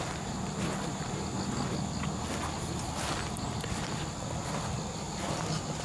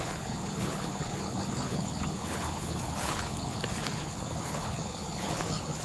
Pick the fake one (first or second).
second